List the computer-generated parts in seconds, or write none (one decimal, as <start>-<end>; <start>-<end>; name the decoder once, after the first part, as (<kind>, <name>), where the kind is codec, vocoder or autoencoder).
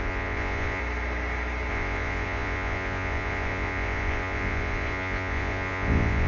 0.0-0.8 (vocoder, Vocos); 1.7-6.3